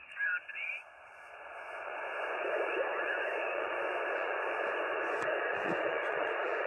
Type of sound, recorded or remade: remade